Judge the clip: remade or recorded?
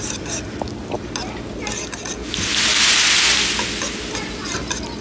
recorded